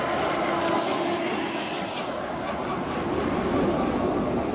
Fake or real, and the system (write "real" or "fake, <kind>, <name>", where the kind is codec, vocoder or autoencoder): real